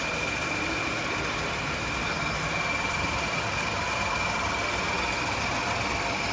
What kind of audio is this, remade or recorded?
recorded